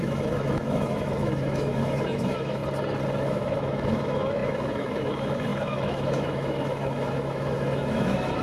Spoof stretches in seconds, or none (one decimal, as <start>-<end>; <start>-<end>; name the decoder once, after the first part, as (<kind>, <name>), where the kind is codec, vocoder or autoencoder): 0.0-2.6 (autoencoder, DAC-VAE); 3.2-8.4